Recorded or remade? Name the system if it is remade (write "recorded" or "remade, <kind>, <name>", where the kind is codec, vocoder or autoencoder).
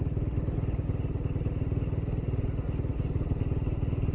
recorded